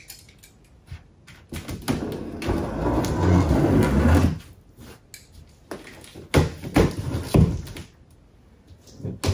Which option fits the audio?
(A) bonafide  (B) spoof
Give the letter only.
A